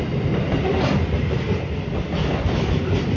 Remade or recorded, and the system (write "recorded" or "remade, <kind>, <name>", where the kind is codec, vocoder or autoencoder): recorded